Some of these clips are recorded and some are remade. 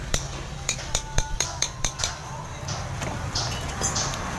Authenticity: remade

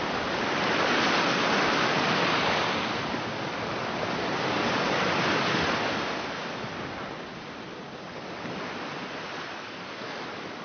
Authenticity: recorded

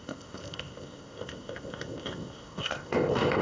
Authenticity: remade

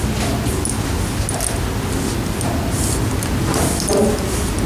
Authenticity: recorded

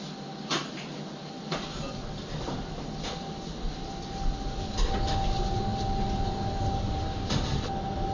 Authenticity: recorded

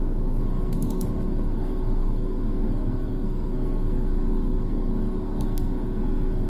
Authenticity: remade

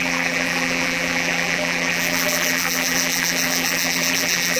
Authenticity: remade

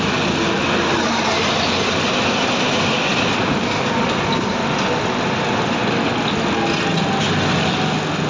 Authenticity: recorded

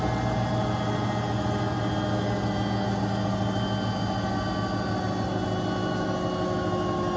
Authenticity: recorded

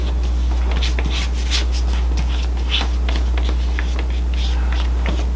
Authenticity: recorded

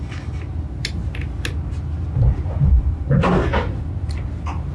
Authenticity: recorded